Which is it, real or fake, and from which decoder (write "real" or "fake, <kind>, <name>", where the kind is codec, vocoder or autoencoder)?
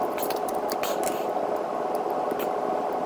real